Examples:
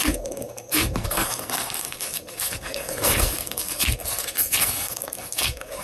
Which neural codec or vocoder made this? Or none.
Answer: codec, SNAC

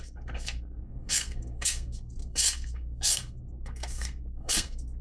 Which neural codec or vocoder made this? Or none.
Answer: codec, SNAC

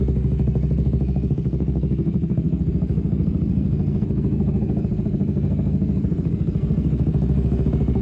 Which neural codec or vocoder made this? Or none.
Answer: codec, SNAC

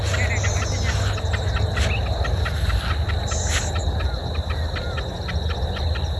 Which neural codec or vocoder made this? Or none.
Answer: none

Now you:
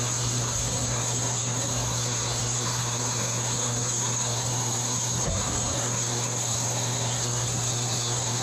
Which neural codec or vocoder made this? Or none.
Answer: codec, SNAC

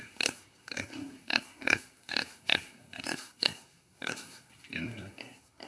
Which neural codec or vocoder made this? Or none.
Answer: codec, SNAC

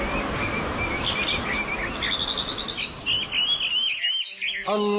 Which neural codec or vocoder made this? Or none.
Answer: none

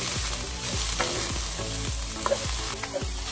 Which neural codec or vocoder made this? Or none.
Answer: none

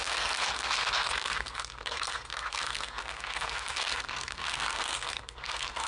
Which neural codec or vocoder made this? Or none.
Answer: codec, SNAC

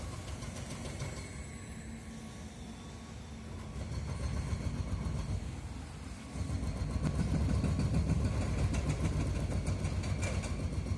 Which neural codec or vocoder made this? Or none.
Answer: none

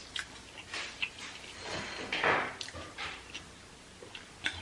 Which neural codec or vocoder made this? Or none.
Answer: none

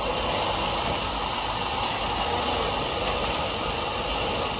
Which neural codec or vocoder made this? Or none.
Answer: none